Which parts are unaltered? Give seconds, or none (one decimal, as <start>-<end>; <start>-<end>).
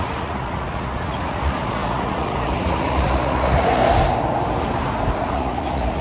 3.8-5.3